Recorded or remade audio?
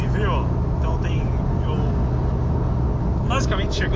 recorded